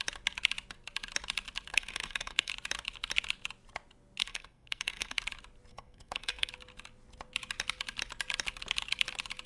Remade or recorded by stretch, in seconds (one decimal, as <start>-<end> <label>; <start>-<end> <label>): 0.0-1.7 recorded; 1.7-2.5 remade; 2.5-4.2 recorded; 4.2-5.2 remade; 5.2-5.7 recorded; 5.7-6.5 remade; 6.5-9.5 recorded